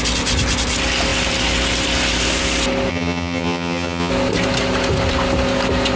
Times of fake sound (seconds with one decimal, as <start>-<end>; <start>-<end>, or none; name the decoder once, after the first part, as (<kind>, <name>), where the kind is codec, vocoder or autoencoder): 2.9-4.1 (vocoder, HiFi-GAN)